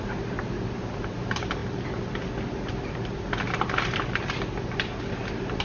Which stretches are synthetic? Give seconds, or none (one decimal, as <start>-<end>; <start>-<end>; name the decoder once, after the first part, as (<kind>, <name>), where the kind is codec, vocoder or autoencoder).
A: none